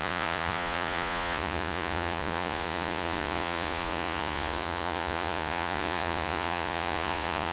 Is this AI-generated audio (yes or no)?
yes